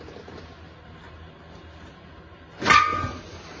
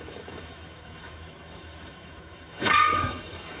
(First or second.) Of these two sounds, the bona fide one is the first